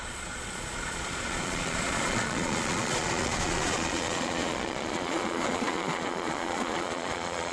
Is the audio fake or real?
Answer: fake